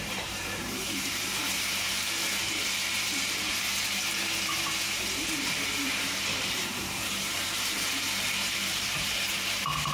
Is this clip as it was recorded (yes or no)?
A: no